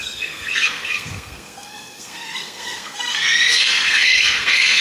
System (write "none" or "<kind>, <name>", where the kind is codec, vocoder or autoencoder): codec, SNAC